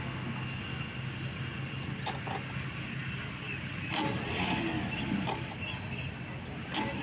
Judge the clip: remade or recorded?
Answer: recorded